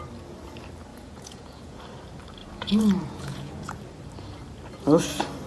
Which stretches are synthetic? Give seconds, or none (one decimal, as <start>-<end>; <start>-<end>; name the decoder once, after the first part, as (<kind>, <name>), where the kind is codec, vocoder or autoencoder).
0.9-1.8 (vocoder, Vocos); 2.4-3.7